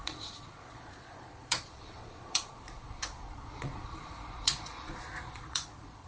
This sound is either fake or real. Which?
fake